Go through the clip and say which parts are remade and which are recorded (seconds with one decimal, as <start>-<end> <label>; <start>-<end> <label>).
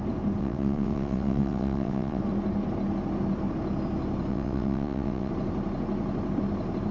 0.0-0.4 recorded; 0.4-2.2 remade; 2.2-4.3 recorded; 4.3-5.3 remade; 5.3-6.9 recorded